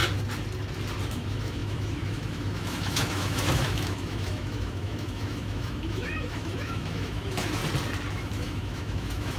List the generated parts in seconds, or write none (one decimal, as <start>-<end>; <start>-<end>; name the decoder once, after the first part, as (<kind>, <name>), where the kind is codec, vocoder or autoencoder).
1.1-7.6 (autoencoder, DAC-VAE); 8.1-9.4

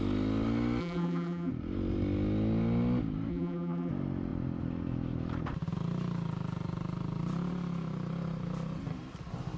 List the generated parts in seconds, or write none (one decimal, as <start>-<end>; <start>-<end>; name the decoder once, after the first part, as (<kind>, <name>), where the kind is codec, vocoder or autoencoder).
0.8-1.5 (vocoder, BigVGAN v2); 3.3-3.9

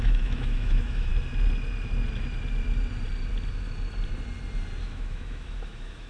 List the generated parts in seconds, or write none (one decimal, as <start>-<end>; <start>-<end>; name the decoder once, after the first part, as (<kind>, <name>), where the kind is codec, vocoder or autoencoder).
0.0-1.1 (autoencoder, DAC-VAE); 4.8-6.1

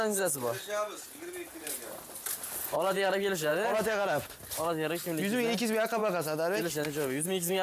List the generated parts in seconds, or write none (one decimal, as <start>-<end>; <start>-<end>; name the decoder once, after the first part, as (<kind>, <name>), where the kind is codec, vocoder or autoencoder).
3.5-4.3 (vocoder, Vocos)